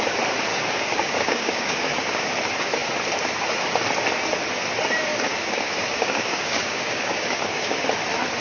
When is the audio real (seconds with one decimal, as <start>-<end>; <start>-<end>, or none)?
0.0-0.5; 2.3-5.1; 7.8-8.4

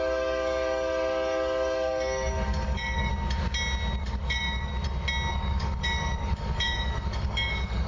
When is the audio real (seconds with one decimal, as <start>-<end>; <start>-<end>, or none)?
3.1-4.0; 4.7-5.3

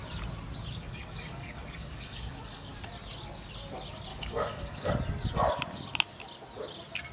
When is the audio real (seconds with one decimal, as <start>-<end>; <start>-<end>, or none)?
0.0-0.8; 2.7-4.1; 4.9-7.1

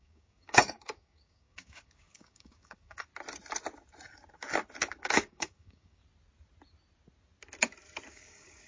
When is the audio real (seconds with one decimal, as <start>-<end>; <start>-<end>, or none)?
3.1-5.0; 6.0-8.1

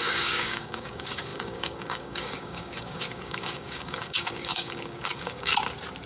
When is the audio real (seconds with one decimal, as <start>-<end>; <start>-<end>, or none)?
5.5-6.1

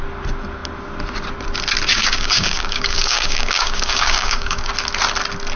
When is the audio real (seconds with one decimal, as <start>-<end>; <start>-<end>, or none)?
0.0-1.9; 4.7-5.6